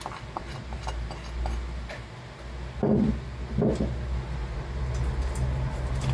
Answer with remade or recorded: recorded